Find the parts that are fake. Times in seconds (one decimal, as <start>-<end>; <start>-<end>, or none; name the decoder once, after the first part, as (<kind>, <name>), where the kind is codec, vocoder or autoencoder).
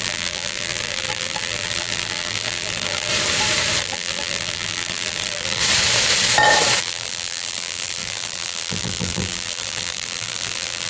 0.0-3.1 (vocoder, BigVGAN v2); 3.8-5.6; 6.8-10.9